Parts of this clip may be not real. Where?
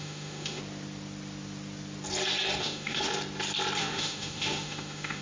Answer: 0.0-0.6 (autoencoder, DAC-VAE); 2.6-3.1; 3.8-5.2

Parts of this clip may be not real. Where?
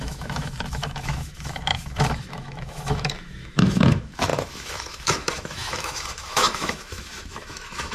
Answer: 0.0-7.9 (autoencoder, DAC-VAE)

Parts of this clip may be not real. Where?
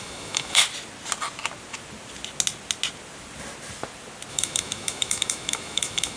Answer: 0.0-0.6 (autoencoder, DAC-VAE); 4.3-6.2